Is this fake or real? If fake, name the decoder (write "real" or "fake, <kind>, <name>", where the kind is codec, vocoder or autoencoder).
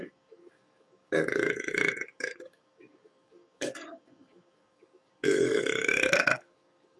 fake, codec, DAC